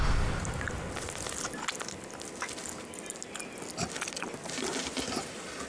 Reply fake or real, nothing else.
real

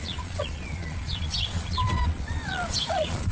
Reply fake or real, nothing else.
fake